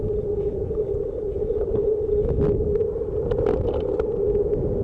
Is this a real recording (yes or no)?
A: no